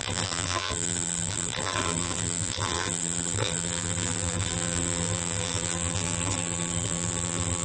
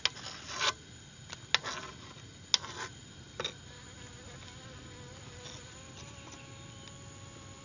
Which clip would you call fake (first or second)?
first